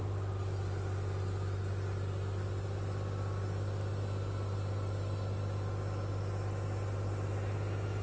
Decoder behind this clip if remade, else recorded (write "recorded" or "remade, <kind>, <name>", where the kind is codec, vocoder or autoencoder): recorded